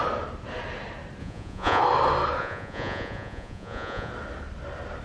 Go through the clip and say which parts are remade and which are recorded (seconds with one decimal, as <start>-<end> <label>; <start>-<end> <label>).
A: 0.0-1.2 recorded; 1.2-1.8 remade; 1.8-2.4 recorded; 2.4-4.1 remade; 4.1-5.0 recorded